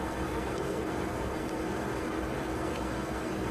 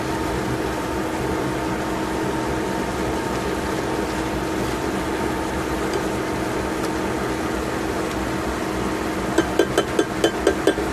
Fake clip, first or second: first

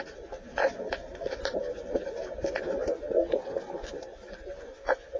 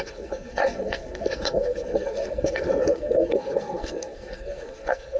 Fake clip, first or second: second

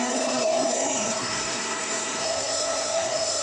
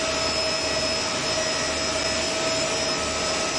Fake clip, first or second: first